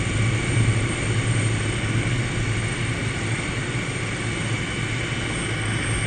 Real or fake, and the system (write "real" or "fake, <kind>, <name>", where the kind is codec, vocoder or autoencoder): real